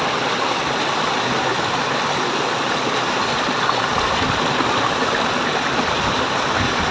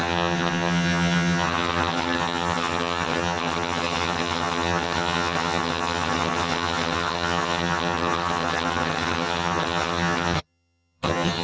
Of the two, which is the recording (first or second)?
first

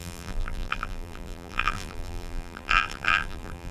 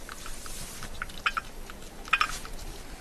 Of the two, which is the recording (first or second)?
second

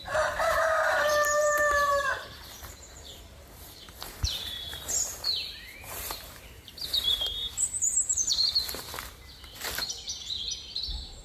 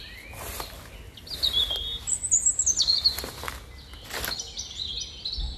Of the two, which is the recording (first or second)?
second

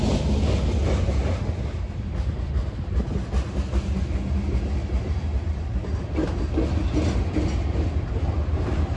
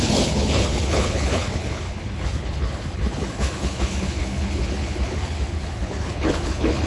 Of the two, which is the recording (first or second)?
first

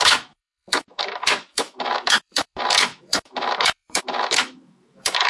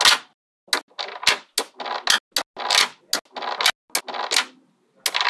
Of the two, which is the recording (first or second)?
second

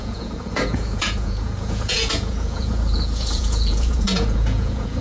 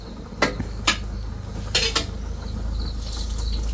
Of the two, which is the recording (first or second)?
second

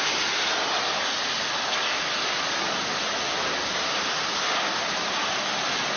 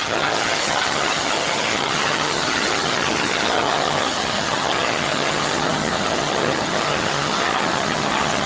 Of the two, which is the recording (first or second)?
first